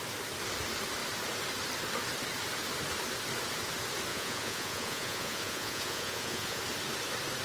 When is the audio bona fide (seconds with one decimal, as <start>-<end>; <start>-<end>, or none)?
0.0-4.1; 6.6-7.4